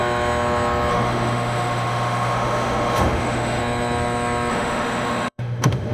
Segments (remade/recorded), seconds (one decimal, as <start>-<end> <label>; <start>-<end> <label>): 0.0-0.9 recorded; 0.9-3.6 remade; 3.6-4.5 recorded; 4.5-5.9 remade